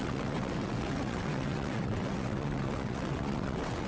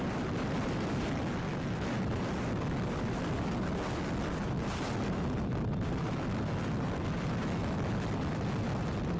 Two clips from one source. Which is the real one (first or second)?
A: second